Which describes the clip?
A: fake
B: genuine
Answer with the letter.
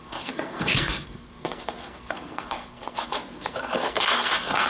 A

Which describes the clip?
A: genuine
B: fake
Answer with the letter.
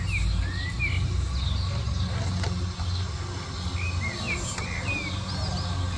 A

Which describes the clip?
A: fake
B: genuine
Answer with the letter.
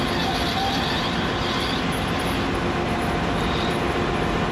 B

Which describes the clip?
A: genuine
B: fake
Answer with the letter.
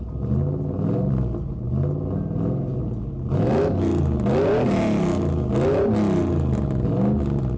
A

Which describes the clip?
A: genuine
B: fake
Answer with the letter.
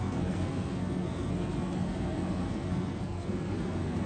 B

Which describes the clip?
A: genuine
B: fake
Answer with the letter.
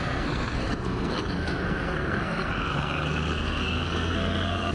B